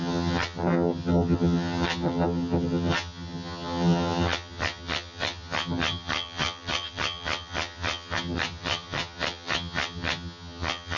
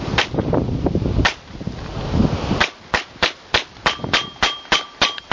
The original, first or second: second